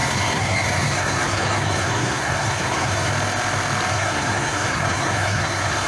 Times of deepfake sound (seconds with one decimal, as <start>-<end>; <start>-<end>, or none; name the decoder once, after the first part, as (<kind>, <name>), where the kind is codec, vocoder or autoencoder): 0.0-3.1 (codec, SNAC); 3.9-5.9